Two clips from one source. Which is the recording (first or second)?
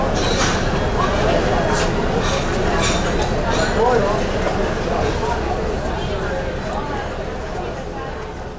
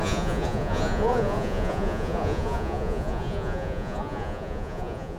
first